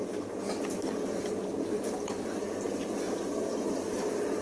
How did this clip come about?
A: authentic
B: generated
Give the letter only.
A